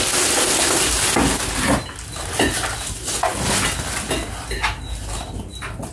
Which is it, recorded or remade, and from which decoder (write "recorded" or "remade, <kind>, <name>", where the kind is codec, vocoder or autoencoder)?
recorded